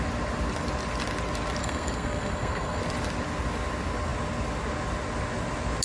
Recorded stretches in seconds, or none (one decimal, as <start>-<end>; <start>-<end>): 0.0-1.6; 2.8-5.8